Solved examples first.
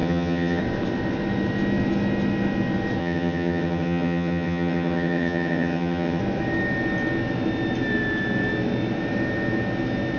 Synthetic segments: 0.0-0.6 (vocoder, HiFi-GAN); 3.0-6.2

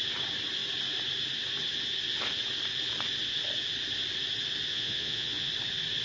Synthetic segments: 4.7-5.5 (vocoder, Vocos)

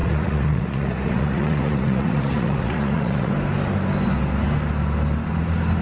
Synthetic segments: 0.0-3.3 (vocoder, Vocos)